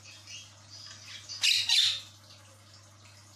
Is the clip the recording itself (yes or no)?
yes